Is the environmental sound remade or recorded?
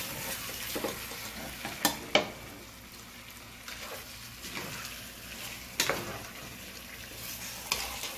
recorded